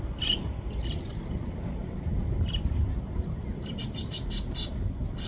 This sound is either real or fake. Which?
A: fake